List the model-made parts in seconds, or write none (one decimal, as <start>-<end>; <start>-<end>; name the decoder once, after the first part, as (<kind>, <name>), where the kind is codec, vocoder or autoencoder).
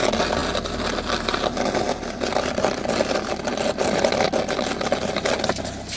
none